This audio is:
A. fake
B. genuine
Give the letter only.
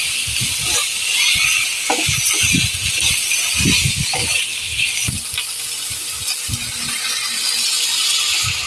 B